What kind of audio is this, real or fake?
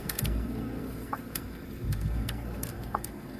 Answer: fake